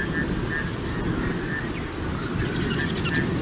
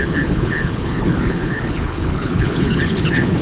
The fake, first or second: second